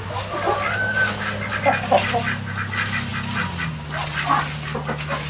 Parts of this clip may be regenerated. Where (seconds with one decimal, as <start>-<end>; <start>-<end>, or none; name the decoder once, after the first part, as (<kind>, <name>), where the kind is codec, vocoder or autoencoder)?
none